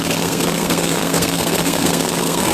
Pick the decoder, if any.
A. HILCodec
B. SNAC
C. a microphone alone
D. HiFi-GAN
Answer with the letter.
B